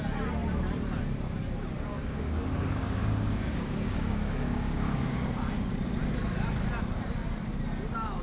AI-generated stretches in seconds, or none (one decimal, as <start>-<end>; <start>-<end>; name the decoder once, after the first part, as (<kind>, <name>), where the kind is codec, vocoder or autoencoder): 1.9-5.3 (codec, DAC)